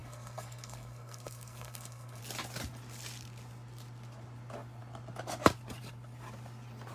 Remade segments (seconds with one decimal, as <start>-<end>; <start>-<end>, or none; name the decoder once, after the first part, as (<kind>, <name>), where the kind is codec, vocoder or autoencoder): 0.0-2.2 (codec, SNAC)